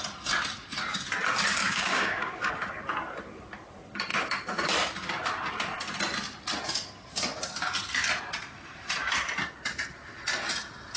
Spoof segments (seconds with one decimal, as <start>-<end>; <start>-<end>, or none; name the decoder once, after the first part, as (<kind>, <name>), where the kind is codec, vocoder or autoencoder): 1.6-2.5 (codec, DAC)